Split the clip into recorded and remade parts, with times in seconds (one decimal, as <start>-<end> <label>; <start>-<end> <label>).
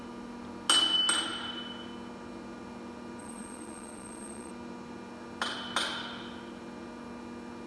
0.0-3.2 recorded; 3.2-4.5 remade; 4.5-7.7 recorded